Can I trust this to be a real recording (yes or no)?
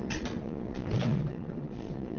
no